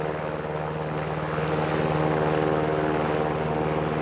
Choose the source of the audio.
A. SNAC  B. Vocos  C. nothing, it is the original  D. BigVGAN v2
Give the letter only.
C